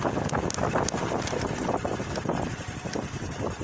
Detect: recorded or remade recorded